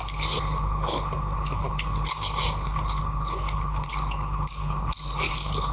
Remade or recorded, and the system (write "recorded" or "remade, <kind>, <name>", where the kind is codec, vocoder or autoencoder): remade, codec, HILCodec